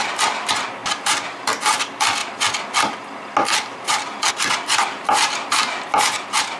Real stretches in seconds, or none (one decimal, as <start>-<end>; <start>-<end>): 0.0-0.8; 1.8-2.2; 2.9-6.6